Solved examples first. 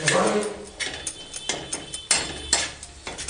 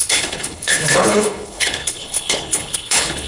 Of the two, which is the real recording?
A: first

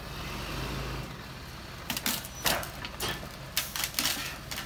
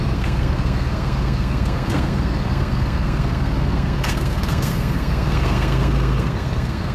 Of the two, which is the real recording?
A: first